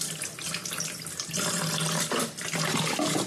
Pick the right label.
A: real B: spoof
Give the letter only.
A